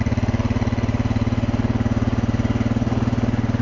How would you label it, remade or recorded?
recorded